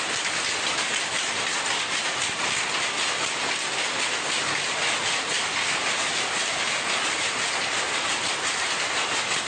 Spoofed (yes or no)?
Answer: no